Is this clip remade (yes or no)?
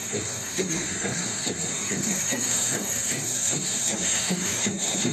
yes